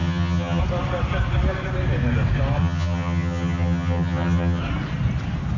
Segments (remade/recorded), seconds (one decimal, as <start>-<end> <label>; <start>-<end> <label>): 0.0-0.6 remade; 0.6-2.6 recorded; 2.6-4.6 remade; 4.6-5.6 recorded